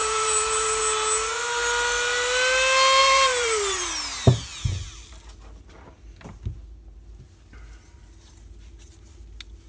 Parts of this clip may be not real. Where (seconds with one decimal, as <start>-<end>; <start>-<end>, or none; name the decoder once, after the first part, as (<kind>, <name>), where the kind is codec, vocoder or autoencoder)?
0.0-0.8 (vocoder, BigVGAN v2); 3.0-3.9